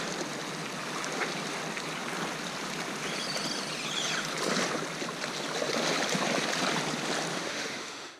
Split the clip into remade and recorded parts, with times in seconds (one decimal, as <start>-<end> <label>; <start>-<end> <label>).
0.0-7.3 recorded; 7.3-8.2 remade